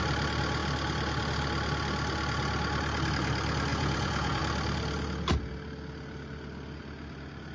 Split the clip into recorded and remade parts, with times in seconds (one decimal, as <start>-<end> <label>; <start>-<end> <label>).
0.0-3.7 recorded; 3.7-4.4 remade; 4.4-7.5 recorded